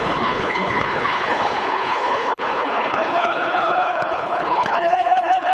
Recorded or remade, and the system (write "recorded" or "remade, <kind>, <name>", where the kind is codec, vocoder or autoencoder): remade, codec, HILCodec